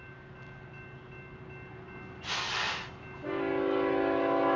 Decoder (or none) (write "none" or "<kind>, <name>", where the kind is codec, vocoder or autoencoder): none